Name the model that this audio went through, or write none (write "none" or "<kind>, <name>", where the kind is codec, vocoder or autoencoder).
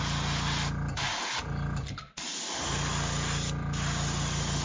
none